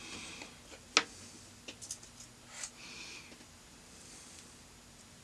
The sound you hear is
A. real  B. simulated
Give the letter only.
A